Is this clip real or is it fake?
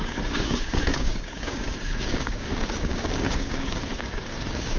fake